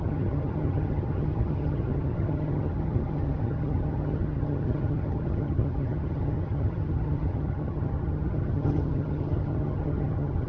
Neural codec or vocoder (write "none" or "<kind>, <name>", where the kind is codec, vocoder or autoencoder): vocoder, HiFi-GAN